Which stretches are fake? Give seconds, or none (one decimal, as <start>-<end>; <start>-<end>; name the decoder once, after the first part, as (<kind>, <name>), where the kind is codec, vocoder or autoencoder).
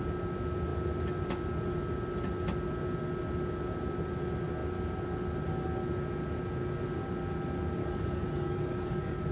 7.8-9.3 (codec, DAC)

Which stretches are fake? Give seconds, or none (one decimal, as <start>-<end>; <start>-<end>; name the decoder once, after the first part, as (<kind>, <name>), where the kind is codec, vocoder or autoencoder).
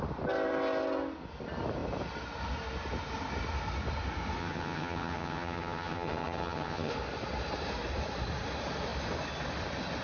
4.4-6.9 (vocoder, HiFi-GAN)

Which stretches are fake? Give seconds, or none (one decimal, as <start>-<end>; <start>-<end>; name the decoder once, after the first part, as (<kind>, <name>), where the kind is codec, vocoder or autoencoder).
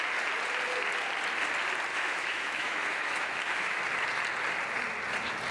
1.9-3.8 (autoencoder, DAC-VAE)